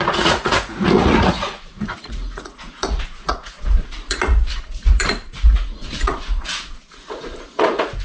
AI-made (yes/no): yes